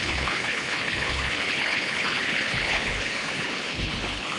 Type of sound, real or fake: fake